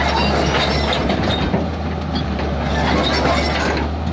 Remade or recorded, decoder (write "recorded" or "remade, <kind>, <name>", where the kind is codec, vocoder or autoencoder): recorded